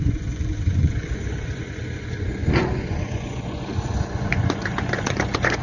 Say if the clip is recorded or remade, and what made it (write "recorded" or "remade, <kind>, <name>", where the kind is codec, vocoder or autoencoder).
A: remade, vocoder, Vocos